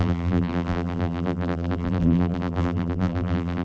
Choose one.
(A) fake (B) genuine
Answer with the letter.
A